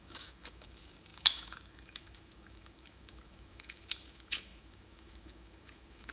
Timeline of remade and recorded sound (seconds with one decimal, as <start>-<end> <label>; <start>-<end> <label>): 0.0-6.1 remade